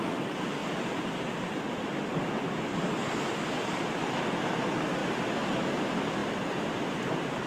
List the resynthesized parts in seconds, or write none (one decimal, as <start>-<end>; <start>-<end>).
0.6-1.6; 6.2-7.5

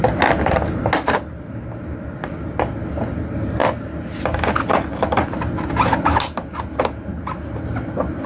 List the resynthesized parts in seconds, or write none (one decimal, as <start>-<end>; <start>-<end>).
none

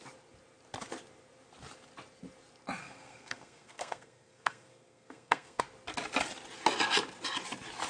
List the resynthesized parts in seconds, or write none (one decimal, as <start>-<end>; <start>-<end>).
2.8-5.6